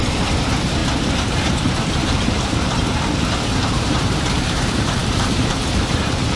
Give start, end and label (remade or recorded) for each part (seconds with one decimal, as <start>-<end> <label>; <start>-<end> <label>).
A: 0.0-0.8 remade; 0.8-1.3 recorded; 1.3-6.4 remade